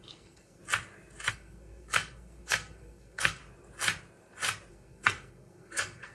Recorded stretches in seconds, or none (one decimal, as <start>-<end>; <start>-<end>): 0.6-1.3; 3.4-4.7